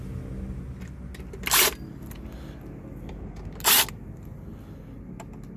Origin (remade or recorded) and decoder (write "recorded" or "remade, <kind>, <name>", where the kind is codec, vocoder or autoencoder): recorded